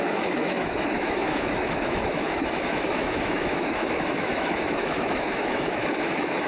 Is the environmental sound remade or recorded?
remade